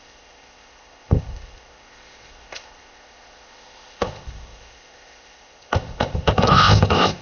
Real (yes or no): no